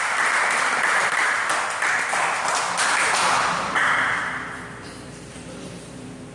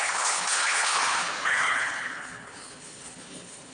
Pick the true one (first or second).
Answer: first